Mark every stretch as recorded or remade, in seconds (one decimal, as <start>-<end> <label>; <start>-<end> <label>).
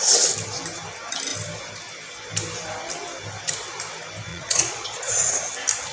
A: 0.0-4.3 recorded; 4.3-5.1 remade; 5.1-5.9 recorded